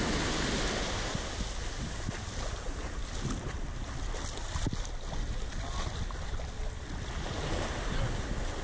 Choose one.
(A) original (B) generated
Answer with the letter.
A